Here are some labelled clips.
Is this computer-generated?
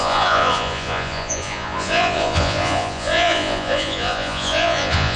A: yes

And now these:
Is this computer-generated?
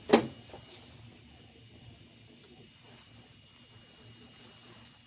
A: no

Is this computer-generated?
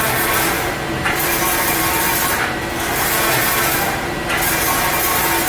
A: yes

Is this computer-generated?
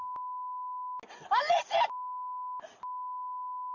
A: no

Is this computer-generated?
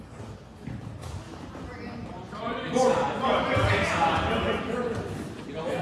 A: no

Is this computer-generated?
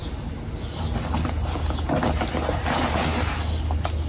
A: no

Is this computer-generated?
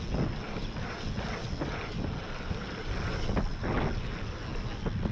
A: no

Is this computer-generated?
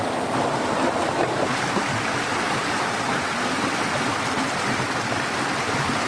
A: no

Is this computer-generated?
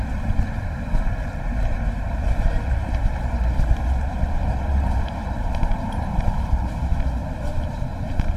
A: yes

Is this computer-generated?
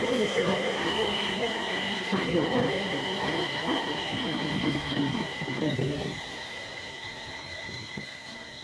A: yes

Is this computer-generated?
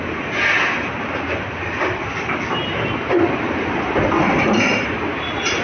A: no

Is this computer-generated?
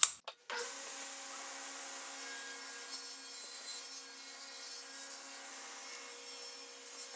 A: no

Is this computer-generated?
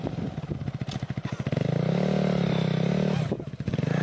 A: no